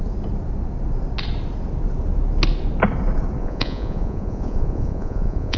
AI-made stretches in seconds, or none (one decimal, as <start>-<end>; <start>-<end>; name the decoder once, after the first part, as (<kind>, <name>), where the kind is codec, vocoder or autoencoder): 3.4-5.6 (vocoder, Vocos)